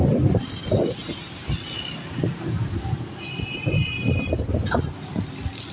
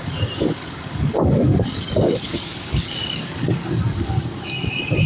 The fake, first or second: second